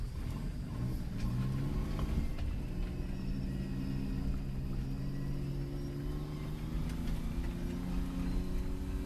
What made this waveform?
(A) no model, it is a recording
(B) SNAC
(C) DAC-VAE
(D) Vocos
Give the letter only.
A